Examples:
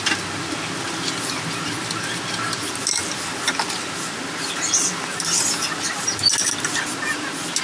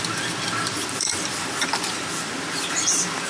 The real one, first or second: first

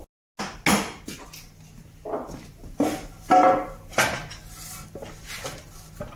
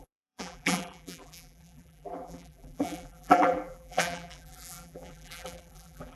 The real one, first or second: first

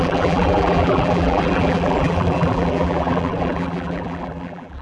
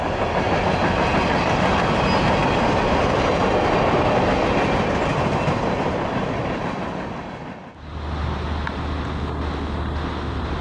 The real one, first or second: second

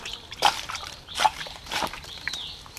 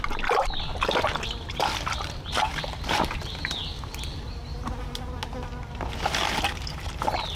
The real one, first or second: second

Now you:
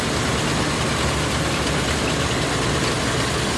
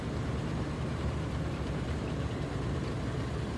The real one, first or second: first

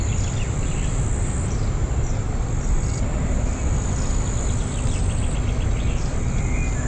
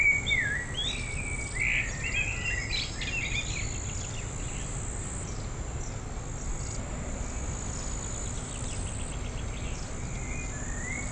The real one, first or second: second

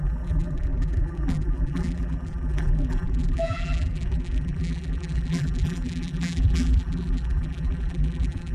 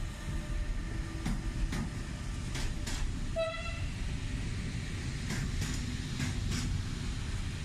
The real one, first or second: second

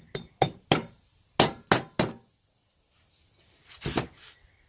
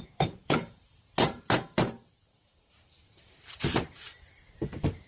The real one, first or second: first